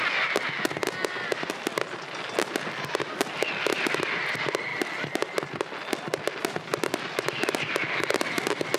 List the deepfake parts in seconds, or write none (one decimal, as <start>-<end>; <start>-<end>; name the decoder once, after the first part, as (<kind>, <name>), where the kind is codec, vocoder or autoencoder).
none